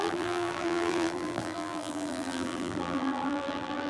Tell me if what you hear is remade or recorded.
remade